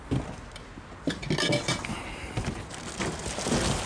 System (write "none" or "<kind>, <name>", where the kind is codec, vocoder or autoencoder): none